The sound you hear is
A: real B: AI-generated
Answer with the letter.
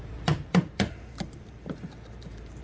B